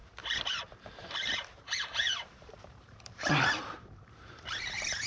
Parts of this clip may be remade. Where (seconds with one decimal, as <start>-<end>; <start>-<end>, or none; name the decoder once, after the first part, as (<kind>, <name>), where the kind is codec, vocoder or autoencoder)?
1.0-1.6 (vocoder, BigVGAN v2); 2.1-5.1